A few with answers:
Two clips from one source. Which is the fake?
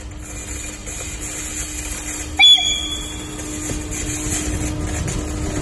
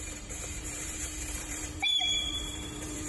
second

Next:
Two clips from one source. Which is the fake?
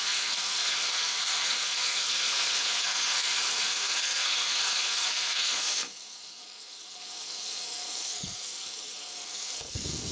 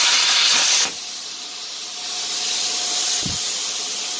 first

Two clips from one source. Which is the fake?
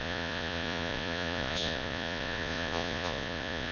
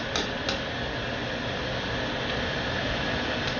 first